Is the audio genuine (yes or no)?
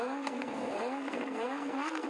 no